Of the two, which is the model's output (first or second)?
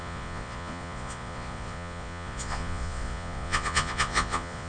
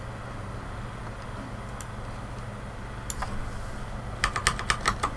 first